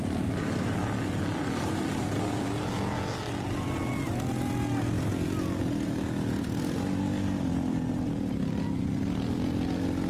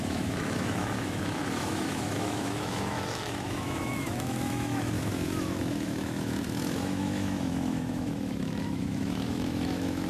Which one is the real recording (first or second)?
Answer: first